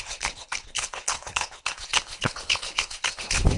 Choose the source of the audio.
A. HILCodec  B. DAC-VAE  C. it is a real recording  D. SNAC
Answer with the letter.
A